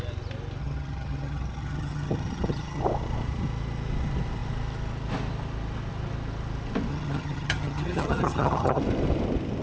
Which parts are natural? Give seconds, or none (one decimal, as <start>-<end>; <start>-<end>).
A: 0.0-0.6; 2.8-6.9; 8.8-9.6